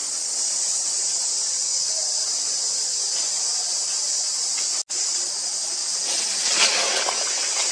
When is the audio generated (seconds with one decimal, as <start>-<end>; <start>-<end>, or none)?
none